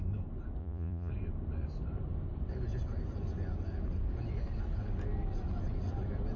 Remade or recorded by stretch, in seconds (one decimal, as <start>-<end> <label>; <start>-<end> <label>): 0.0-0.6 recorded; 0.6-1.1 remade; 1.1-6.4 recorded